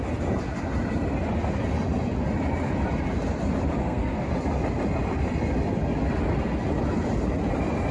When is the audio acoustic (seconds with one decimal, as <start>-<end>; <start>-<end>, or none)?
0.0-3.8; 4.3-7.9